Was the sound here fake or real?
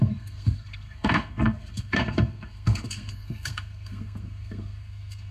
fake